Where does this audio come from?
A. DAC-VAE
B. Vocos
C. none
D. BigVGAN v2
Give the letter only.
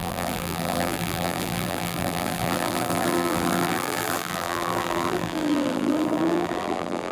D